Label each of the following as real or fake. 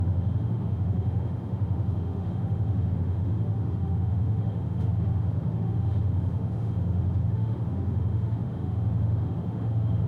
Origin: fake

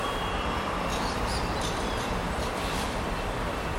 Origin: fake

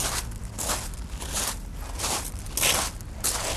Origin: real